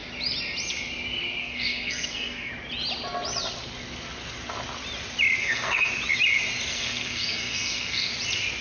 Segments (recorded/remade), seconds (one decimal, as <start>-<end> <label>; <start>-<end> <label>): 0.0-1.4 recorded; 1.4-2.5 remade; 2.5-5.4 recorded; 5.4-5.9 remade; 5.9-6.7 recorded; 6.7-8.1 remade; 8.1-8.6 recorded